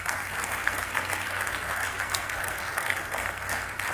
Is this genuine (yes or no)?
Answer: no